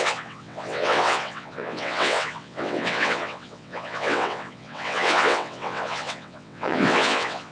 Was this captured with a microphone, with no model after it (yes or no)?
no